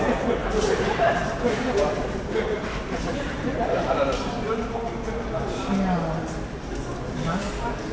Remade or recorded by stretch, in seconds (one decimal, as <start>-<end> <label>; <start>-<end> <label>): 0.0-0.4 recorded; 0.4-4.3 remade; 4.3-7.9 recorded